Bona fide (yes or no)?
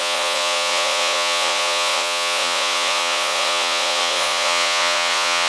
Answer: no